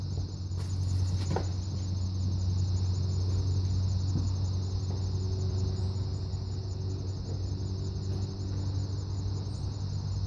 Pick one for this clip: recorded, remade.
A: recorded